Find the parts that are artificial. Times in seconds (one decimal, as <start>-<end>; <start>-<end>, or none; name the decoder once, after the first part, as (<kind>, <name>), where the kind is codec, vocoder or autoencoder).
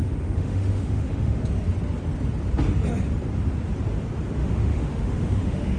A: 0.0-1.4 (autoencoder, DAC-VAE); 4.4-5.8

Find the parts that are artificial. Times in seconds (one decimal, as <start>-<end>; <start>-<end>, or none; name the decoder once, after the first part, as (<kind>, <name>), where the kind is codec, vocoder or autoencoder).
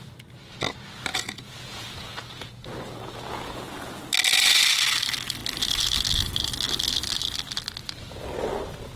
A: 1.1-4.0 (vocoder, Vocos)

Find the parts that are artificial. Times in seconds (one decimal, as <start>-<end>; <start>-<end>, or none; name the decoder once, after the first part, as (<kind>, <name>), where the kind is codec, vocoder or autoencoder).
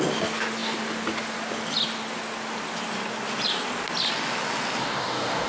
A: 4.8-5.5 (codec, DAC)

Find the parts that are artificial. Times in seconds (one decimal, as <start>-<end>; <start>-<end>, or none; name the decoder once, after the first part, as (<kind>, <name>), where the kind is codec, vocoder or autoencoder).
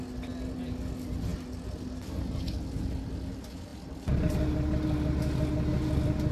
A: none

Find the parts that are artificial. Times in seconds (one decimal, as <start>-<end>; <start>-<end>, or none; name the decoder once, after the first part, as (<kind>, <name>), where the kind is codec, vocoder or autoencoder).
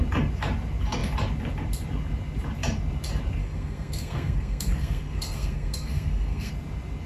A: 3.4-6.5 (codec, SNAC)